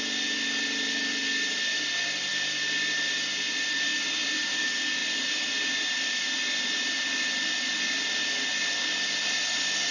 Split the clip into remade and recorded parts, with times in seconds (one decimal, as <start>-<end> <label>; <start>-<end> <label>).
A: 0.0-9.9 recorded